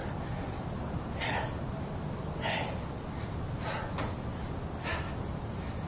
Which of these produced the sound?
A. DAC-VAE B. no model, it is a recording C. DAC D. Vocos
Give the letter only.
B